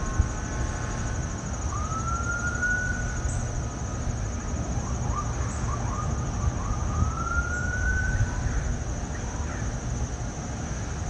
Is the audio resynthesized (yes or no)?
no